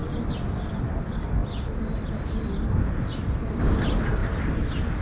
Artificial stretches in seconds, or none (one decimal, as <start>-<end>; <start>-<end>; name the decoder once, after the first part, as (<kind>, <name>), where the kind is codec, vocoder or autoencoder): 0.0-1.0 (vocoder, BigVGAN v2); 4.2-5.0

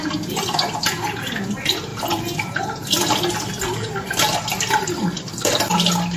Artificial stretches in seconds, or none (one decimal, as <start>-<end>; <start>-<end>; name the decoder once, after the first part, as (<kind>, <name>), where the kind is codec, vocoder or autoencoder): none

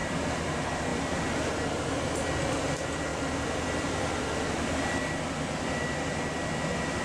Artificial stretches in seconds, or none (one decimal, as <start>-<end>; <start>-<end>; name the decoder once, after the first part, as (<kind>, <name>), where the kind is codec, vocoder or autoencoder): 0.0-0.5 (vocoder, BigVGAN v2); 3.1-4.7

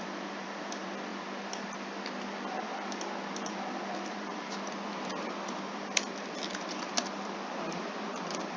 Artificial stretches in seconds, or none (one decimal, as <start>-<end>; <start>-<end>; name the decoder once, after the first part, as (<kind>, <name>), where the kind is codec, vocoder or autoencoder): 0.0-1.1 (vocoder, BigVGAN v2); 2.6-8.6

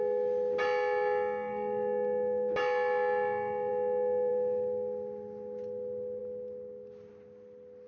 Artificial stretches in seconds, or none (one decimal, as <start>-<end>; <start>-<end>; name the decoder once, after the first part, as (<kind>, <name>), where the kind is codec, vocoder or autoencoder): none

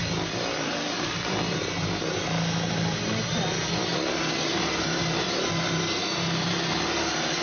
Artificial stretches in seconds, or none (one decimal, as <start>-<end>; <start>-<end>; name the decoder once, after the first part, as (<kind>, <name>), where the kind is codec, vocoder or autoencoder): 0.0-1.6 (vocoder, BigVGAN v2); 3.9-4.8

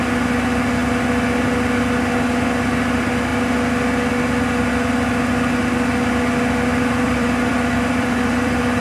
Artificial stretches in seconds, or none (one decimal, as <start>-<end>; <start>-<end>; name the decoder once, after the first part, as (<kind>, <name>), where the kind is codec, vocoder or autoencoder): 6.7-8.8 (vocoder, BigVGAN v2)